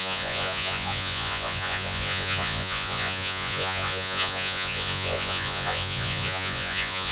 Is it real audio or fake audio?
fake